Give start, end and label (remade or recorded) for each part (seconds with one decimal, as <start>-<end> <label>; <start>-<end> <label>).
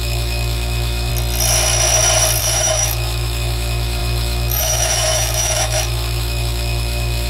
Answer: 0.0-1.1 remade; 1.1-2.4 recorded; 2.4-7.3 remade